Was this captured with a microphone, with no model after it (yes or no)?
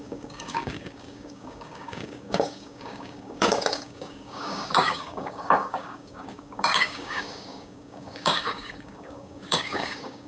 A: no